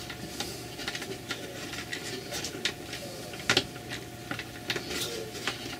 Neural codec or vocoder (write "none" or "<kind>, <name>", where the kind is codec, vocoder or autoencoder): none